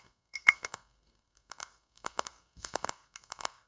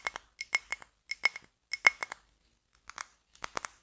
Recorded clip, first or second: second